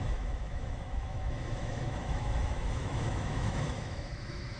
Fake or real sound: fake